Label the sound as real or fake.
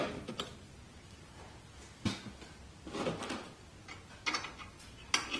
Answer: real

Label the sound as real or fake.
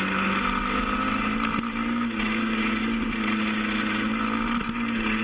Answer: real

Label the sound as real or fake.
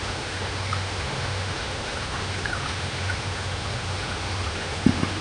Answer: fake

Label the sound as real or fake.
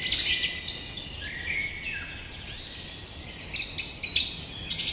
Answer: real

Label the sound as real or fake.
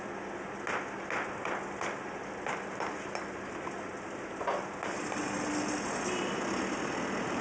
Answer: real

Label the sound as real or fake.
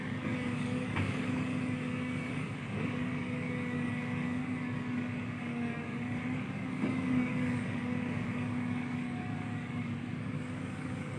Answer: fake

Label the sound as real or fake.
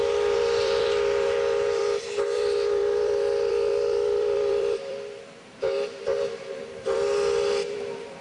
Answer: fake